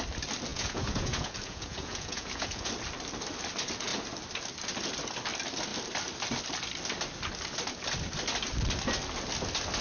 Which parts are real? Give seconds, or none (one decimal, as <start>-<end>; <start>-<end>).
0.0-0.5; 2.7-9.8